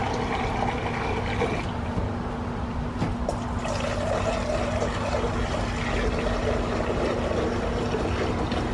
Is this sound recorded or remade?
recorded